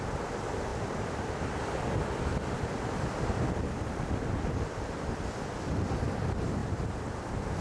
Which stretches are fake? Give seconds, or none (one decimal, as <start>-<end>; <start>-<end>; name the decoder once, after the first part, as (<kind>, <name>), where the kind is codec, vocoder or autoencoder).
none